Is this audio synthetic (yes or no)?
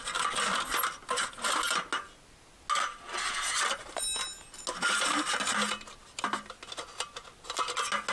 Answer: no